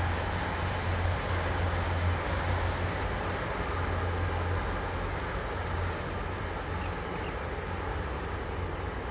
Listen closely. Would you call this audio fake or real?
real